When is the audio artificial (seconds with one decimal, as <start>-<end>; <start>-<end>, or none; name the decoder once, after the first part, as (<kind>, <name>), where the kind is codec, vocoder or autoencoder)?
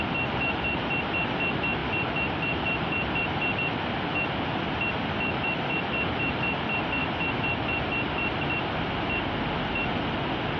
none